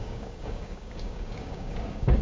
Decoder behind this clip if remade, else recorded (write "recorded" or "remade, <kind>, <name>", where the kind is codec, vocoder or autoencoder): remade, codec, DAC